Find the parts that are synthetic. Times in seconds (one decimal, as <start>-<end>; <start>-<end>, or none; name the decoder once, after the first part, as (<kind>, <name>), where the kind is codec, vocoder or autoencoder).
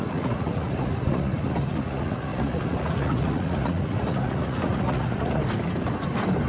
0.0-5.4 (vocoder, Vocos)